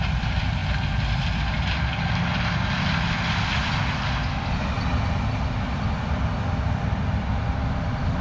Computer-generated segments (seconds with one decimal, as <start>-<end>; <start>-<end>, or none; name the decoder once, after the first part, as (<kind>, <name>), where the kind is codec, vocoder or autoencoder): none